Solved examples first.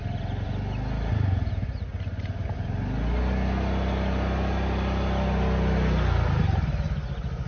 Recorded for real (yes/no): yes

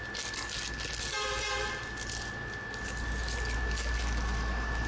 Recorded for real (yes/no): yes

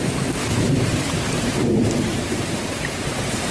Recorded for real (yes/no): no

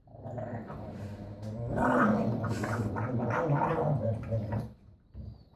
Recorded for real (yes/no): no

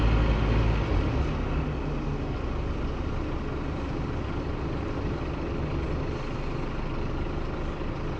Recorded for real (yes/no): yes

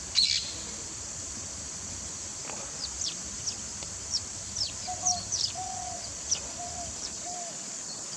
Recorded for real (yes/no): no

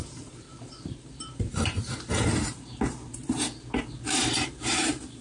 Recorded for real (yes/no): no